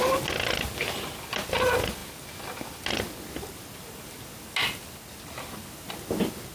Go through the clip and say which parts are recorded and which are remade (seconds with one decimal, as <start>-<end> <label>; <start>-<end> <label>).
0.0-6.5 recorded